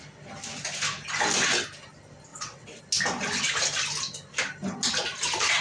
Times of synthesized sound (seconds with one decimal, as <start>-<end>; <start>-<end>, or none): 2.3-2.8